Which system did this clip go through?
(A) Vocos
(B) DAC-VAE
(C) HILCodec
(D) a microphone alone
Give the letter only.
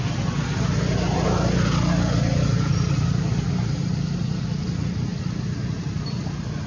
D